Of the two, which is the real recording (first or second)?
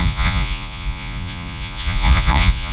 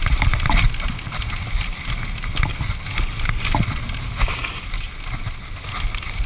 second